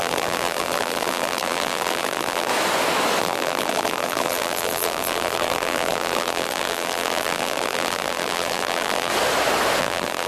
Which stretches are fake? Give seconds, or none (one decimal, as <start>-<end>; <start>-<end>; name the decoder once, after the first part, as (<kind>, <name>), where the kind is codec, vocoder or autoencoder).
0.0-2.5 (vocoder, BigVGAN v2); 3.2-9.1; 9.8-10.3

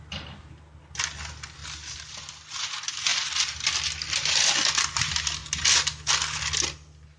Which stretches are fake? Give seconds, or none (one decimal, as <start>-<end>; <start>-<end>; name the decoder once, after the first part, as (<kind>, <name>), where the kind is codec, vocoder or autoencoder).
1.6-2.6 (vocoder, BigVGAN v2); 3.1-5.0

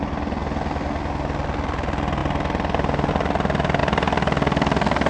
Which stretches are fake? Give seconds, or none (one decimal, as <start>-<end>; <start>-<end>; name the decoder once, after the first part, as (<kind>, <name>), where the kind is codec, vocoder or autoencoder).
none

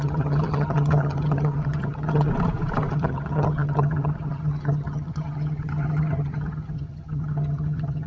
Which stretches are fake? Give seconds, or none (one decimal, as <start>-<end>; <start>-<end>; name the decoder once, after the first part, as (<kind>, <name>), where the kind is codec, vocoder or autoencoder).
0.0-2.3 (vocoder, HiFi-GAN); 2.9-8.1

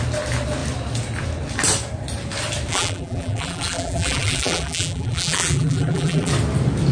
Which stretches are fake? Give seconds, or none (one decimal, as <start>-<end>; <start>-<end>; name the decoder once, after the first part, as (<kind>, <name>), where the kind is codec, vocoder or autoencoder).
2.7-6.3 (vocoder, BigVGAN v2)